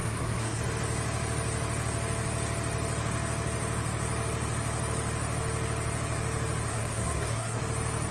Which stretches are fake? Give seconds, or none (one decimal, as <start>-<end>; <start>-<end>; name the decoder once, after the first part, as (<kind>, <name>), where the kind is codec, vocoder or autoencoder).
0.0-0.6 (codec, SNAC); 6.7-7.6

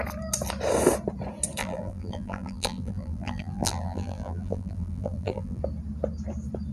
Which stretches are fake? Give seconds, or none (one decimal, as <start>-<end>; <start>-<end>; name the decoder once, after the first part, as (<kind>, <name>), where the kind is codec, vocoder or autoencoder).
1.6-5.6 (vocoder, BigVGAN v2)

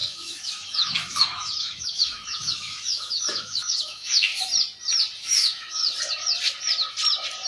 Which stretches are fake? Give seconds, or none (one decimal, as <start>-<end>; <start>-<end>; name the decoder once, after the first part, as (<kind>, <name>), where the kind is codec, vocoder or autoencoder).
0.0-4.3 (autoencoder, DAC-VAE); 5.2-5.8

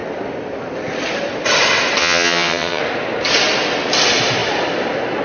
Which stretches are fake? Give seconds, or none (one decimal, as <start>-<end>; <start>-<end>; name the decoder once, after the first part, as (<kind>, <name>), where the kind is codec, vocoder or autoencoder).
2.0-2.8 (vocoder, HiFi-GAN)

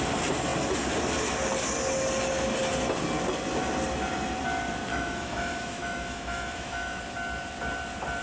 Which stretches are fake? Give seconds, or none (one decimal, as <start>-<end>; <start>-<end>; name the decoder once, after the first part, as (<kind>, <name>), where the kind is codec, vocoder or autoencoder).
4.9-7.0 (autoencoder, DAC-VAE)

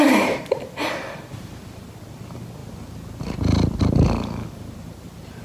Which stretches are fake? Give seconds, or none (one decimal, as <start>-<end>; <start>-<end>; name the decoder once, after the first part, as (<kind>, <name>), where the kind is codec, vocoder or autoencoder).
0.0-2.6 (vocoder, BigVGAN v2); 3.8-5.4

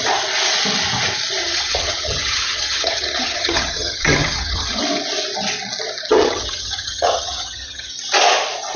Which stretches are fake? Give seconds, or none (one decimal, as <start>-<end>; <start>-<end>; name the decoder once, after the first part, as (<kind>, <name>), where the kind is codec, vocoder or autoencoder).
1.4-4.8 (vocoder, HiFi-GAN); 6.1-7.9